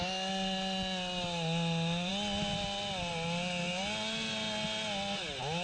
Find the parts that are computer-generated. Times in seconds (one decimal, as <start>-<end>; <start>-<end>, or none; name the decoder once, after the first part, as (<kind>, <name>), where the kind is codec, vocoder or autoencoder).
none